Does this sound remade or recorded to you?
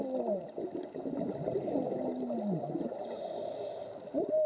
recorded